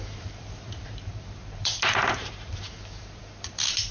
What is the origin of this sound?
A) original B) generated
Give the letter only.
B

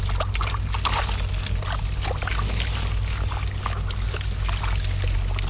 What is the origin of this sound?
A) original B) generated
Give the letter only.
A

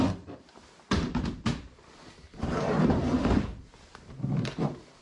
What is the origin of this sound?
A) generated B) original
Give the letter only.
A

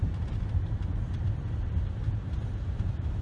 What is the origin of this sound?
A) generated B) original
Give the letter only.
A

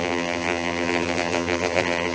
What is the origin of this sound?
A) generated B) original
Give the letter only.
A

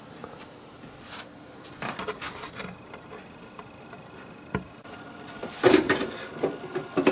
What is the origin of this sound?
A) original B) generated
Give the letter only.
B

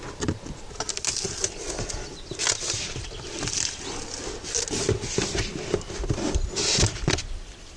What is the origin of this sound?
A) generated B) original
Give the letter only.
B